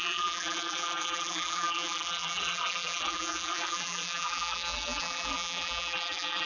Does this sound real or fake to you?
fake